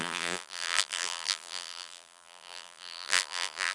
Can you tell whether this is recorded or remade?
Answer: remade